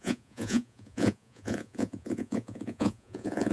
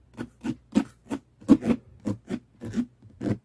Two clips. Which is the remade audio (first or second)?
first